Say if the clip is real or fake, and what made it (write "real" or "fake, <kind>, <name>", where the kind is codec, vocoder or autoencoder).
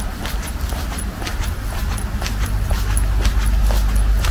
real